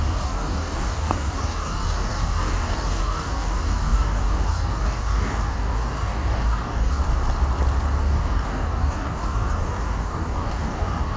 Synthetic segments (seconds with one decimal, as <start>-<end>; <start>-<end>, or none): 0.0-7.0; 8.0-11.2